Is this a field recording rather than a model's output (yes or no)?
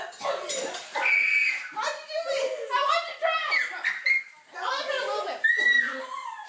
yes